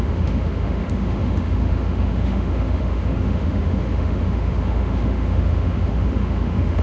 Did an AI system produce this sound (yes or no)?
yes